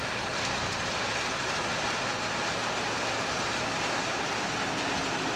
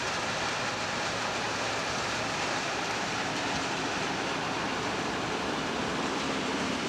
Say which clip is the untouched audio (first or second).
first